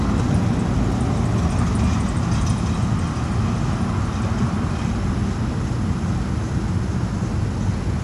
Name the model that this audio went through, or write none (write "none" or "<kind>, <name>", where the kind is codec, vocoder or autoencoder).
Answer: none